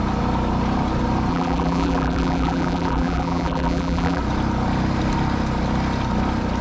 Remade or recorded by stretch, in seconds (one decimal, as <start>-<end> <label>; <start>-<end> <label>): 0.0-1.3 recorded; 1.3-4.2 remade; 4.2-6.6 recorded